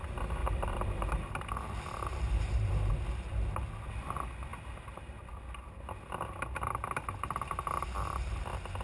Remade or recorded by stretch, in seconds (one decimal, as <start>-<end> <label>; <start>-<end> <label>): 0.0-0.4 recorded; 0.4-1.3 remade; 1.3-2.1 recorded; 2.1-2.9 remade; 2.9-8.8 recorded